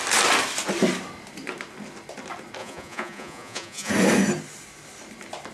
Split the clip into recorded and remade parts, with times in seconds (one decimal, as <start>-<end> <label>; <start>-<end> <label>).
0.0-2.6 recorded; 2.6-3.9 remade; 3.9-5.5 recorded